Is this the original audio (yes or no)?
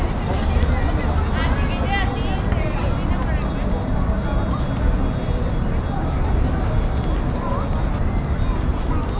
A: yes